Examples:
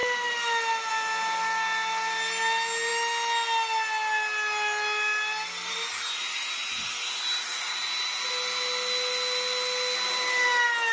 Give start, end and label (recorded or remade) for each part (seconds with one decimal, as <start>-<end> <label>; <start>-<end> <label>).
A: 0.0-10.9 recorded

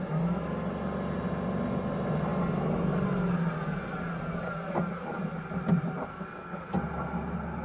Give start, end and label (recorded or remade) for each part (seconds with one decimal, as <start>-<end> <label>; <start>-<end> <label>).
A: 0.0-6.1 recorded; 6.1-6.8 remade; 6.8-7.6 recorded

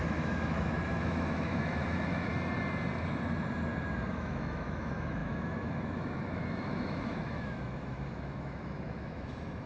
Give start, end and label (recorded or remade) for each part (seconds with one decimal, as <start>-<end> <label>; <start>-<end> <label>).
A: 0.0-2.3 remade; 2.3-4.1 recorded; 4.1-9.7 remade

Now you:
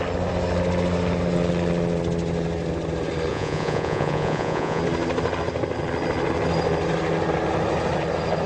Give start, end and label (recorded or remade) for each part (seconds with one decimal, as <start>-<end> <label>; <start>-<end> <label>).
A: 0.0-3.3 recorded; 3.3-4.8 remade; 4.8-8.5 recorded